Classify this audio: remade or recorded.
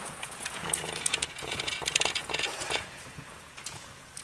remade